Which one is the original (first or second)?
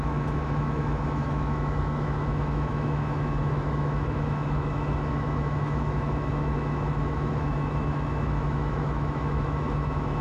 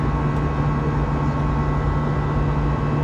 second